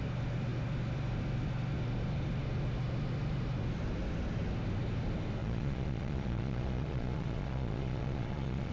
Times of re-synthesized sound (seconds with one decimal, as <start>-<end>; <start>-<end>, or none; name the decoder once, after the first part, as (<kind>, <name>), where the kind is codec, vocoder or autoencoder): 5.4-8.7 (vocoder, Vocos)